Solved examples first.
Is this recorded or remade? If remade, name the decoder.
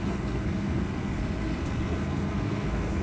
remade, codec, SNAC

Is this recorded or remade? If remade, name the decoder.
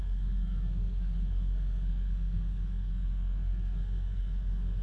remade, codec, SNAC